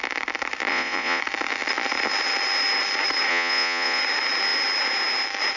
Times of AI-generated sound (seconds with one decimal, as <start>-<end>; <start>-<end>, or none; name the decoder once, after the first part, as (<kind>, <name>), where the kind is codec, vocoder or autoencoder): 0.7-1.2 (vocoder, Vocos); 3.3-4.0